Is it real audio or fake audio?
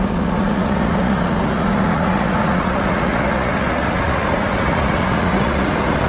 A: fake